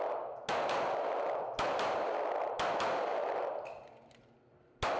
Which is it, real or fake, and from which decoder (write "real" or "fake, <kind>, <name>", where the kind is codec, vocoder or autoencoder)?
real